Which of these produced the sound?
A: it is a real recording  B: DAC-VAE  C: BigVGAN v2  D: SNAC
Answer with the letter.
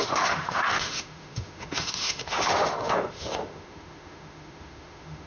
B